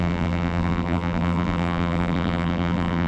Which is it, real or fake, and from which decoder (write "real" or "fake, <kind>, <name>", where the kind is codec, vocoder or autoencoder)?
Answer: fake, vocoder, BigVGAN v2